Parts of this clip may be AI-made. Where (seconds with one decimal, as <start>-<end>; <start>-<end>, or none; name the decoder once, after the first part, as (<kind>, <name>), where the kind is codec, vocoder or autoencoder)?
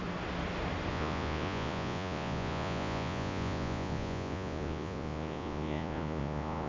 0.9-6.7 (vocoder, Vocos)